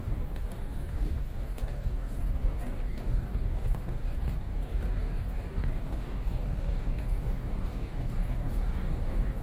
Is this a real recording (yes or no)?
no